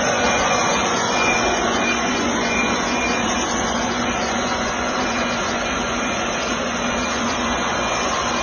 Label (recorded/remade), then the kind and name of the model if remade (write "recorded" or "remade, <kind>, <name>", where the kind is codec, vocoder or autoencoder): remade, vocoder, Vocos